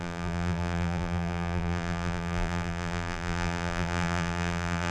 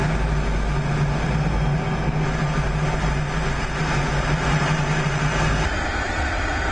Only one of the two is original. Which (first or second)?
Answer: second